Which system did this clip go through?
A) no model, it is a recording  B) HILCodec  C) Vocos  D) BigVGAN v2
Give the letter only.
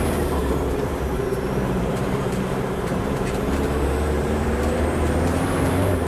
D